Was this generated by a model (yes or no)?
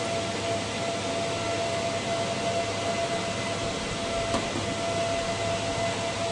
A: no